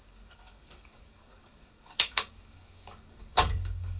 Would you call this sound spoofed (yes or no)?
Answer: yes